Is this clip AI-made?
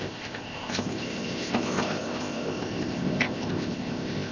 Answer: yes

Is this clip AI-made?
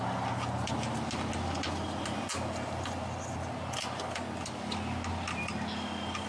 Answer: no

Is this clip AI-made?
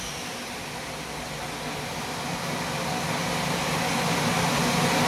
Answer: no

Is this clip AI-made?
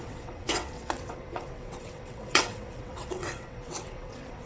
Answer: yes